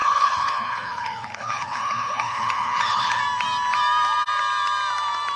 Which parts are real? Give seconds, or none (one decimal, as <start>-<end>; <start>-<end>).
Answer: 3.2-5.4